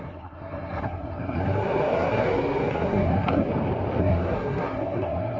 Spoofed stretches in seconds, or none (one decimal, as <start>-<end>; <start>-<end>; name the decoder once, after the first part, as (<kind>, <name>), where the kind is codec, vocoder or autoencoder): 0.0-3.5 (codec, SNAC); 4.0-5.4